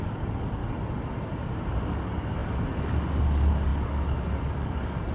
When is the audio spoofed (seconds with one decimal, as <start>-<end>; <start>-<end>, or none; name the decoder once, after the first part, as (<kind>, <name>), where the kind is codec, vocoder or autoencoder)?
0.0-0.6 (codec, DAC); 1.9-5.1